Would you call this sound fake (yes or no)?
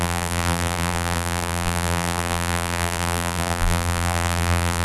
yes